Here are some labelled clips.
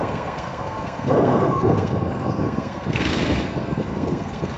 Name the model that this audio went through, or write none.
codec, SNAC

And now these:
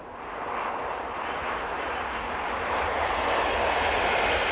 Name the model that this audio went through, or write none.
none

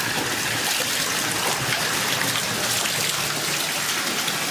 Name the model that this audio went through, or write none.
none